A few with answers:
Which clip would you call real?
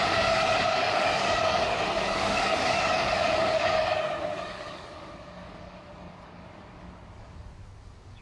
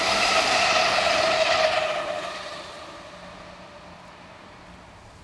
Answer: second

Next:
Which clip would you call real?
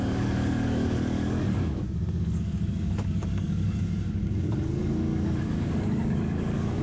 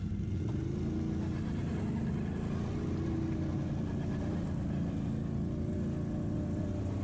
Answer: second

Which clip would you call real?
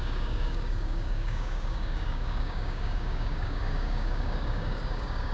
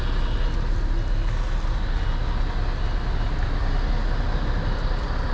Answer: second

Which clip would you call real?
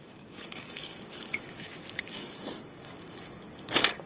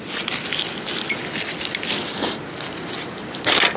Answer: second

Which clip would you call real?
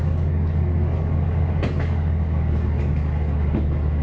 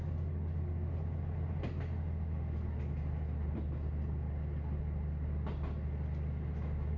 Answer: second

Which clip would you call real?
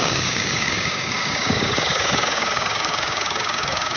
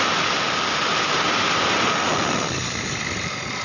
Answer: second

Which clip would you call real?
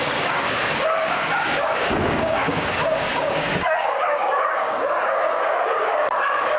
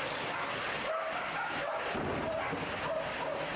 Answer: second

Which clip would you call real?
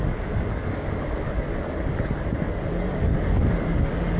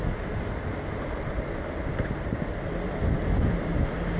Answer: second